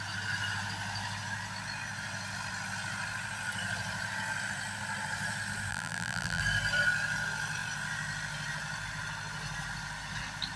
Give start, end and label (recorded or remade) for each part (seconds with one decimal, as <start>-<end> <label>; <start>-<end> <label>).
0.0-5.7 recorded; 5.7-6.4 remade; 6.4-10.6 recorded